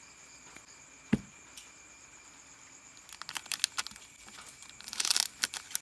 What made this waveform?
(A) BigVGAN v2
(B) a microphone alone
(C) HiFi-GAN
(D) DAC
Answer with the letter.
B